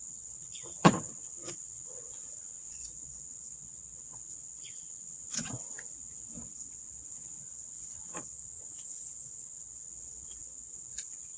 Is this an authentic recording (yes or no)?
no